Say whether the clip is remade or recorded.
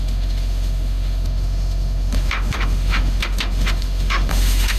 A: remade